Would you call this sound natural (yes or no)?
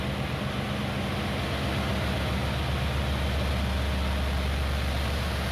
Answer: yes